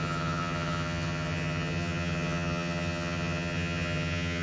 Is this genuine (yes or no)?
no